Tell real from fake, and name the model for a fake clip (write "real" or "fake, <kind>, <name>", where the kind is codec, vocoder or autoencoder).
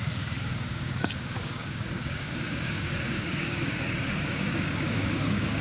fake, codec, DAC